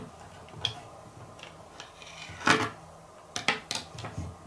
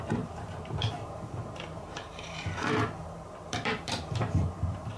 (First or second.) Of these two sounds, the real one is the first